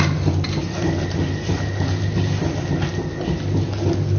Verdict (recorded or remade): recorded